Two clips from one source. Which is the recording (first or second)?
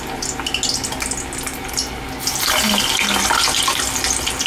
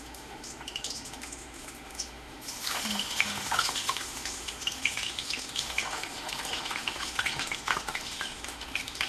first